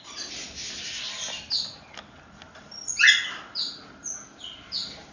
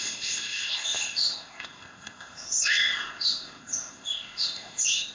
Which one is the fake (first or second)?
second